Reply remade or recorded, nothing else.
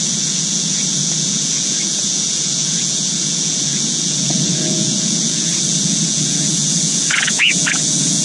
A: remade